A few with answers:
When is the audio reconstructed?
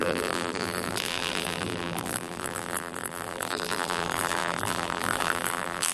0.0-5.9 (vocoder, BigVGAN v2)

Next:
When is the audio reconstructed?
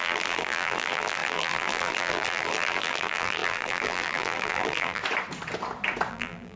0.0-5.0 (vocoder, BigVGAN v2); 6.1-6.6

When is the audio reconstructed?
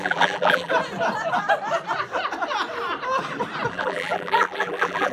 0.0-0.7 (vocoder, BigVGAN v2); 3.7-5.1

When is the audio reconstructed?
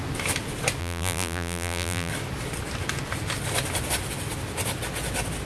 0.8-2.1 (vocoder, BigVGAN v2)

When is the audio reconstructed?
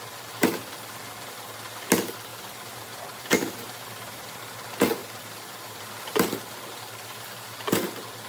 2.3-4.4 (vocoder, BigVGAN v2); 5.0-6.7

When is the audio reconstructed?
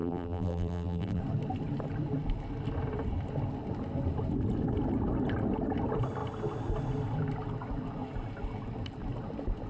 0.0-1.2 (vocoder, BigVGAN v2)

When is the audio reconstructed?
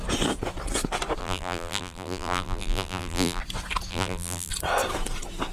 1.2-3.4 (vocoder, BigVGAN v2); 3.9-4.5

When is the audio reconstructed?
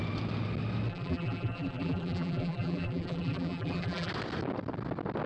0.9-4.1 (vocoder, BigVGAN v2)